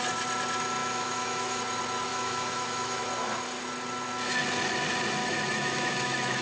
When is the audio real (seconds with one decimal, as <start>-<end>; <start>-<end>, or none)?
0.0-0.8; 1.6-2.1; 3.0-5.2